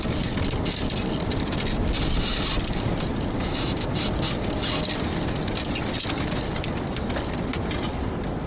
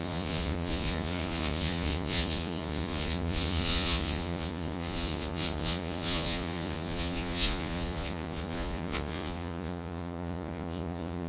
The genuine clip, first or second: first